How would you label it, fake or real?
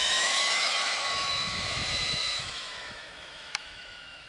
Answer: fake